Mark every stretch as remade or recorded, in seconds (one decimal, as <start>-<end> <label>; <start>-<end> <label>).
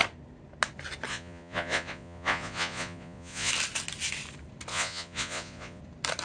0.0-1.1 recorded; 1.1-3.5 remade; 3.5-4.7 recorded; 4.7-5.8 remade; 5.8-6.2 recorded